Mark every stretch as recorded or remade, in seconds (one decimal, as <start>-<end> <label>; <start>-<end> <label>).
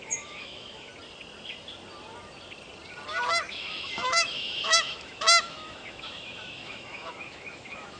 0.0-0.9 remade; 0.9-3.5 recorded; 3.5-8.0 remade